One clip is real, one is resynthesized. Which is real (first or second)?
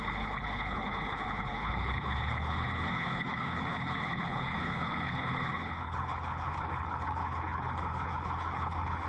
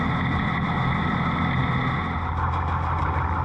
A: second